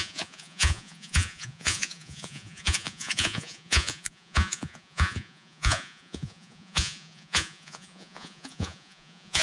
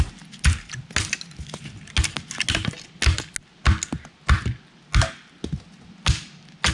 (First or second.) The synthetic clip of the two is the first